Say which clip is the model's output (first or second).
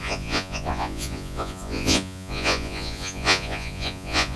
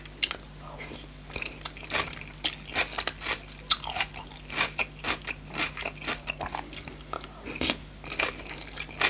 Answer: first